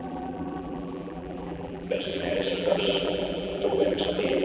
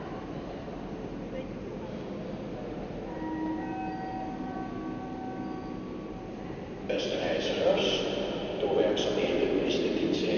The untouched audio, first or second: second